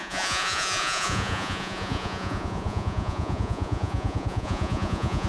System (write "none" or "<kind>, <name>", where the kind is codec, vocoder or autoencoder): vocoder, Vocos